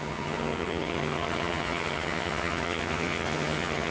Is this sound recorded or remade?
remade